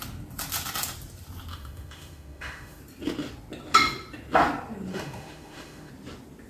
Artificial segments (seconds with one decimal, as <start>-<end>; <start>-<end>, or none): 1.5-2.8; 4.9-5.9

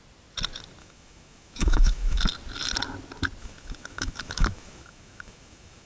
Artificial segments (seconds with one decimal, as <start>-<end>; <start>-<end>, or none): 0.8-2.2; 3.4-5.9

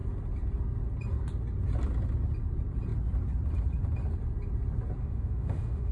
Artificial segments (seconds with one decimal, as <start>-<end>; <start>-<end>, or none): 5.0-5.9

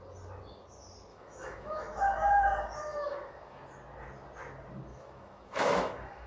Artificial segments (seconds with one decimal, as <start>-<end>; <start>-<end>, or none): 1.1-2.4; 2.9-3.6; 4.9-6.3

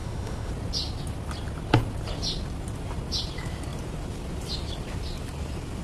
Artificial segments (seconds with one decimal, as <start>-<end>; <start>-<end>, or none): 0.0-0.5

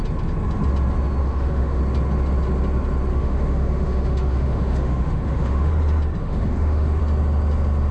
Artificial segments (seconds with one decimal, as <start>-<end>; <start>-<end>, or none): 1.2-1.8; 3.1-5.7; 6.2-7.0